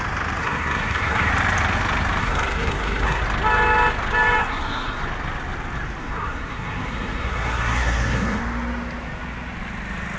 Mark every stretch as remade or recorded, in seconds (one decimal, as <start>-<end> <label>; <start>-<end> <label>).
0.0-0.4 recorded; 0.4-1.3 remade; 1.3-2.2 recorded; 2.2-3.2 remade; 3.2-4.4 recorded; 4.4-5.0 remade; 5.0-6.0 recorded; 6.0-8.4 remade; 8.4-10.2 recorded